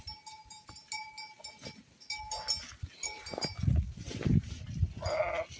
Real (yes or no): yes